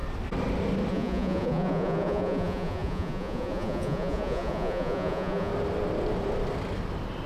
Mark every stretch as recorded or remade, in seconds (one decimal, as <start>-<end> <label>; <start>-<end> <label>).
0.0-0.9 recorded; 0.9-5.5 remade; 5.5-7.3 recorded